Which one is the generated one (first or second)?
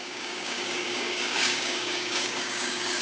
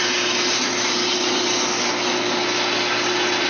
first